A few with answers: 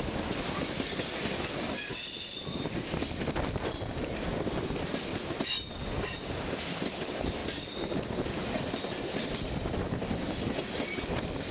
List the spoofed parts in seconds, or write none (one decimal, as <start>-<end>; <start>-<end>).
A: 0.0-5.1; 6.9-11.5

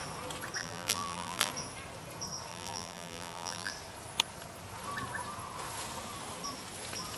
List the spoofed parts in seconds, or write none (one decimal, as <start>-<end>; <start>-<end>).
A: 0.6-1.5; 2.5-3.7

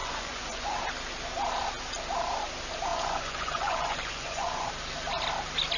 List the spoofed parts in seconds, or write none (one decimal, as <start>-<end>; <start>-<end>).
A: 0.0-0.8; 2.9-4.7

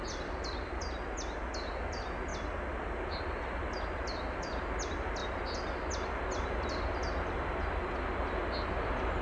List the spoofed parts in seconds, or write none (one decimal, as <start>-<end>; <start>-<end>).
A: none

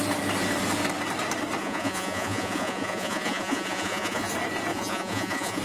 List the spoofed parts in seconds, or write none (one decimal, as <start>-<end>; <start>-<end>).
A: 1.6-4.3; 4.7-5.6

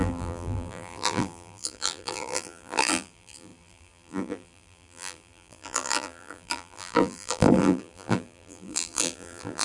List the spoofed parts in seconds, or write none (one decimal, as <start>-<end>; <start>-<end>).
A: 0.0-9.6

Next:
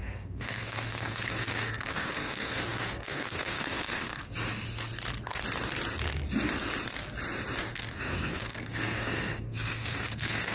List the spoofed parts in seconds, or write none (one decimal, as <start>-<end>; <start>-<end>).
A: 0.0-4.2; 7.6-10.5

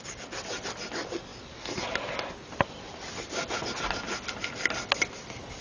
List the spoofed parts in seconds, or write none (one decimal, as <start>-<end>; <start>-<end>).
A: none